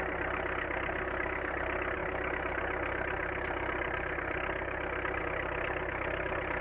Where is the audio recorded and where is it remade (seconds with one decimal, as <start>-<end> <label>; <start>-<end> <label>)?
0.0-6.6 recorded